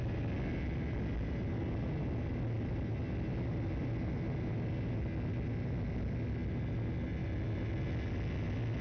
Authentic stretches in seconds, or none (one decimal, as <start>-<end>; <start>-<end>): 0.0-8.8